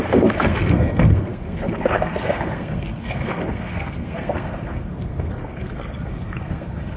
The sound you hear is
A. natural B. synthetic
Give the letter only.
B